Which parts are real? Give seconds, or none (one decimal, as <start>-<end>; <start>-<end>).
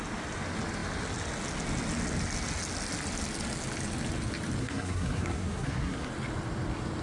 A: 0.0-4.6; 6.1-7.0